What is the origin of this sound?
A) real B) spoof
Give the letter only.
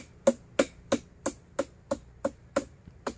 A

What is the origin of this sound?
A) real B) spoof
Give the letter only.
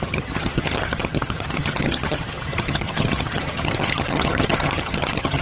B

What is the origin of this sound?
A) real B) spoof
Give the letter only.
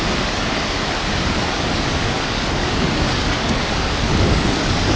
B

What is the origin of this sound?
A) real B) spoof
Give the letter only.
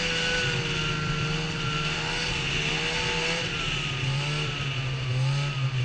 A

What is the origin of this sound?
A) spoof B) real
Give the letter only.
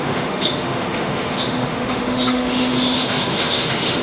A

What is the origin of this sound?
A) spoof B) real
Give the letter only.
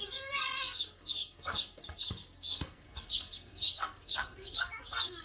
A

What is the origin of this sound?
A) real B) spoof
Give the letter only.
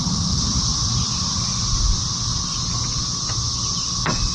A